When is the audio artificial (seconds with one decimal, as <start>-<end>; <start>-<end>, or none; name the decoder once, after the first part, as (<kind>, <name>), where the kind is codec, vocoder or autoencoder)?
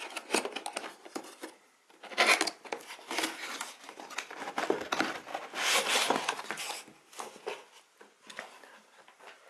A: none